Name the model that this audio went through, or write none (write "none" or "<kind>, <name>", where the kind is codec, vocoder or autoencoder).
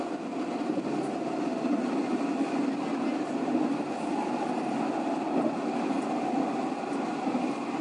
none